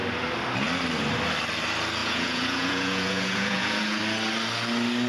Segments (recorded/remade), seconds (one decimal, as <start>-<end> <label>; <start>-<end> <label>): 0.0-2.0 recorded; 2.0-4.0 remade; 4.0-5.1 recorded